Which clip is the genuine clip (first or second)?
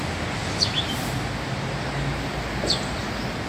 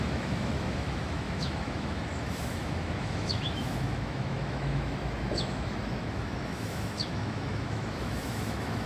first